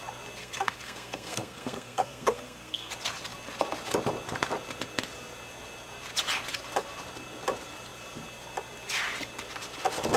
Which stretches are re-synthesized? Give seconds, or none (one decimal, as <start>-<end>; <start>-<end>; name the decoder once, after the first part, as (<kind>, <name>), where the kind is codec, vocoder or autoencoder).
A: 0.4-2.9 (codec, SNAC)